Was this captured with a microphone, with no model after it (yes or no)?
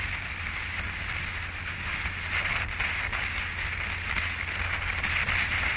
yes